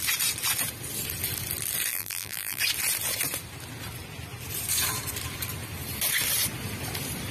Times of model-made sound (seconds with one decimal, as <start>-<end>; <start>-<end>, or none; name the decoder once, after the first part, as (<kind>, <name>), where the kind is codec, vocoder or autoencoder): 1.9-2.6 (vocoder, BigVGAN v2)